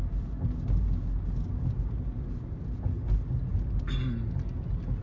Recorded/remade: recorded